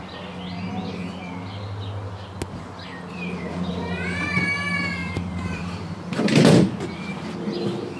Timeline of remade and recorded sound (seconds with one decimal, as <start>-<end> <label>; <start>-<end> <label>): 0.0-3.1 recorded; 3.1-3.7 remade; 3.7-5.0 recorded; 5.0-5.6 remade; 5.6-8.0 recorded